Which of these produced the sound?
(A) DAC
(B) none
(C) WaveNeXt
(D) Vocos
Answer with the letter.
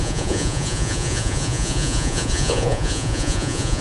D